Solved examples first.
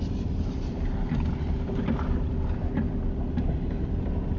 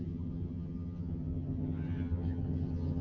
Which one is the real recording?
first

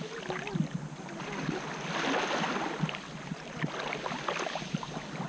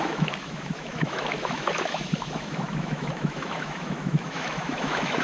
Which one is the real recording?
first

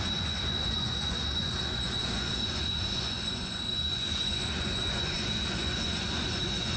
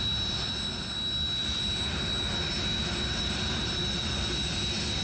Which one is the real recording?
second